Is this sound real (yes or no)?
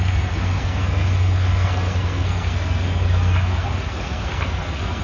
no